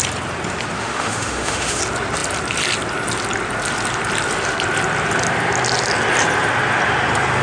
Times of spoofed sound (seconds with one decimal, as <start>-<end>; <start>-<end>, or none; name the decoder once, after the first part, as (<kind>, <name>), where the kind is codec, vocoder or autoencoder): 0.8-1.8 (autoencoder, DAC-VAE)